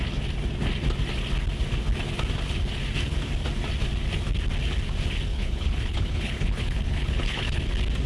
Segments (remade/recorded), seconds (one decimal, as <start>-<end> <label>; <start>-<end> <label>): 0.0-5.3 recorded; 5.3-7.6 remade; 7.6-8.1 recorded